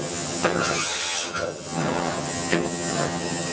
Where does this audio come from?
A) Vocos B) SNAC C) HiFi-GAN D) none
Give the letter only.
C